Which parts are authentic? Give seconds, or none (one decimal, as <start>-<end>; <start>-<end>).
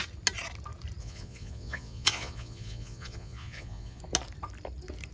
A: 0.0-1.0; 4.0-5.1